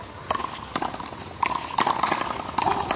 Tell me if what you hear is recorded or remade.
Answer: recorded